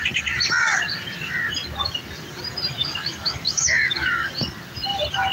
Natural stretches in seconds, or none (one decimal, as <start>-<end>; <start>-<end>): 0.0-2.8; 4.3-5.3

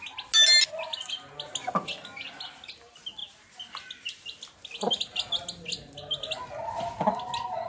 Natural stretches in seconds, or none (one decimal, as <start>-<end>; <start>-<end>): 0.0-7.7

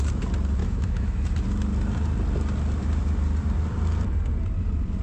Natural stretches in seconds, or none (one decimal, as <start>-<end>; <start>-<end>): 0.0-0.6; 1.3-5.0

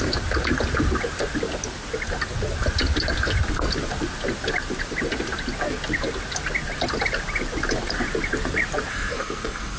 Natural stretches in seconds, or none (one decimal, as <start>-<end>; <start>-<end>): 0.0-8.9